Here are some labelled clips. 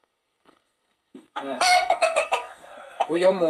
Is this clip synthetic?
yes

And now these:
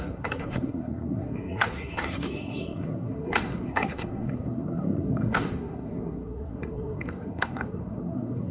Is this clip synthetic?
yes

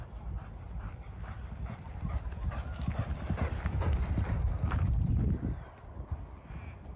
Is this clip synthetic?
yes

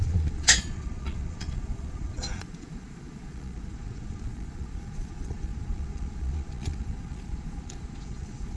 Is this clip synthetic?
yes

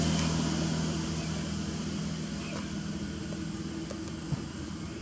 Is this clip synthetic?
no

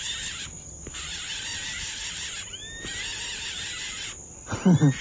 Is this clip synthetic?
no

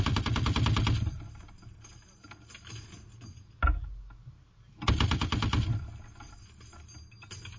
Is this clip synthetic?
no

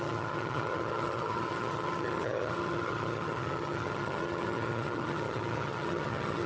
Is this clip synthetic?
yes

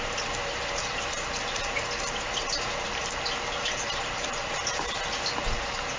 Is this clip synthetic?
no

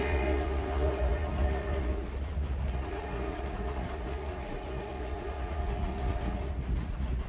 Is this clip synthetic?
yes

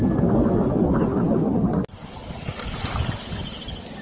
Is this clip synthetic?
no